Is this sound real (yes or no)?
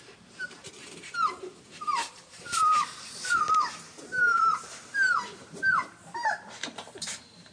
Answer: no